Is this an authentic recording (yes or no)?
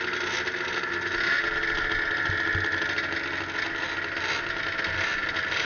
yes